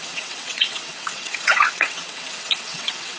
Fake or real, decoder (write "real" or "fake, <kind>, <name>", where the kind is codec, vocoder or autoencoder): fake, vocoder, WaveNeXt